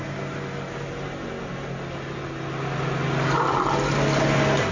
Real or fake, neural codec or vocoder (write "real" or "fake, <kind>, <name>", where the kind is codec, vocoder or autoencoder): real